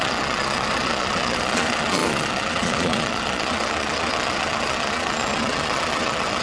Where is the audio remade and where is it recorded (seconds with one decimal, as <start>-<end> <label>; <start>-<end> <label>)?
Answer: 0.0-6.4 remade